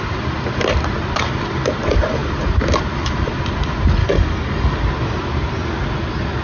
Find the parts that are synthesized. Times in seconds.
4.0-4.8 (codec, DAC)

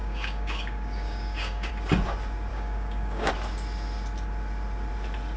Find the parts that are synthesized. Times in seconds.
0.0-1.7 (codec, DAC); 2.5-3.3

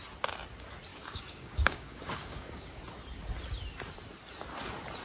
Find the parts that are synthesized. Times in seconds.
0.9-2.8 (codec, DAC)

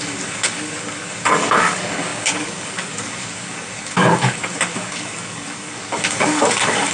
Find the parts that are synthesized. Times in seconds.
0.0-6.9 (codec, DAC)

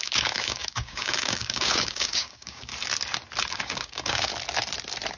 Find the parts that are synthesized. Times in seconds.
0.0-2.7 (codec, DAC); 3.5-4.3

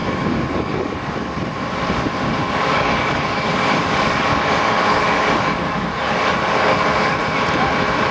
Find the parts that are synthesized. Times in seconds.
0.0-1.4 (codec, DAC); 2.4-7.2